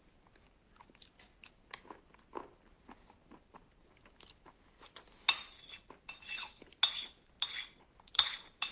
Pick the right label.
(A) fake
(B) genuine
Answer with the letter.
B